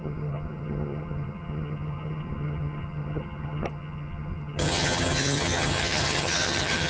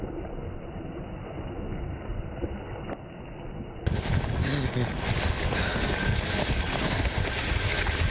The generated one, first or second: first